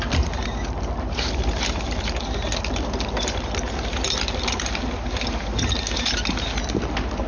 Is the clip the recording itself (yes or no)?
yes